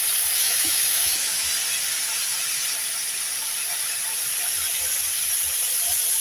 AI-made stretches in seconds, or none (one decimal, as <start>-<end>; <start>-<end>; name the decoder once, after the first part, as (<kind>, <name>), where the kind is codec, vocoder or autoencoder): 0.4-1.5 (autoencoder, DAC-VAE)